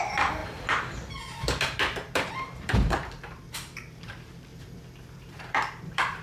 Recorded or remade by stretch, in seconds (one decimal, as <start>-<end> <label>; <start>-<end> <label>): 0.0-4.5 remade; 4.5-5.1 recorded; 5.1-6.2 remade